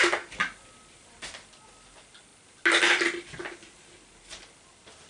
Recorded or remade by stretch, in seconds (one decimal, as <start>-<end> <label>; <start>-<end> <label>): 0.0-5.1 recorded